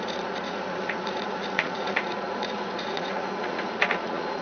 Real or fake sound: fake